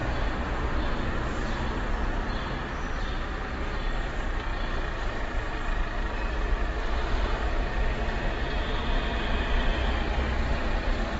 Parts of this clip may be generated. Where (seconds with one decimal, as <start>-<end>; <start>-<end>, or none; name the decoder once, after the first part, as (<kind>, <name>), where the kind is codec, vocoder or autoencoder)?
0.0-0.9 (vocoder, BigVGAN v2)